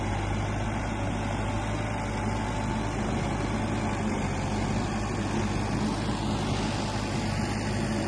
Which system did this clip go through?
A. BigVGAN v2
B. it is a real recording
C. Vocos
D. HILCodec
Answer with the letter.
B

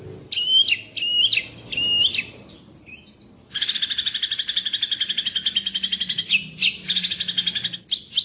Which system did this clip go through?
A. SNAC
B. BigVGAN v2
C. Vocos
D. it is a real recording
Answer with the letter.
D